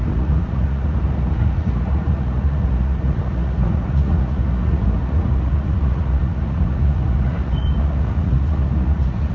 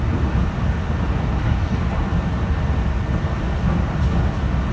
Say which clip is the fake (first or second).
first